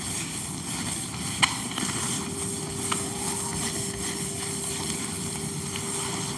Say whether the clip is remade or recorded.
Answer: recorded